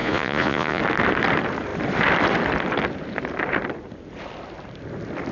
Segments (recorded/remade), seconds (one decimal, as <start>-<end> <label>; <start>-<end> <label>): 0.0-0.8 remade; 0.8-5.3 recorded